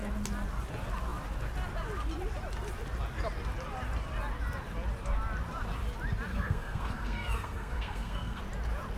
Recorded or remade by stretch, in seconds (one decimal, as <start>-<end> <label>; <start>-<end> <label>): 0.0-6.3 recorded; 6.3-8.4 remade; 8.4-9.0 recorded

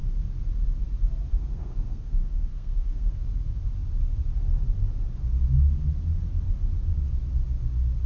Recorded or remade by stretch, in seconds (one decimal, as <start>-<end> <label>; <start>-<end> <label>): 0.0-1.3 recorded; 1.3-3.3 remade; 3.3-8.1 recorded